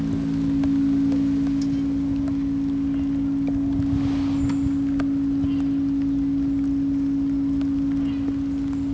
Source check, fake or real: real